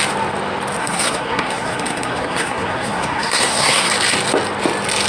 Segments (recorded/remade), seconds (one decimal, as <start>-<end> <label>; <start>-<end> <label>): 0.0-0.8 recorded; 0.8-3.9 remade; 3.9-5.1 recorded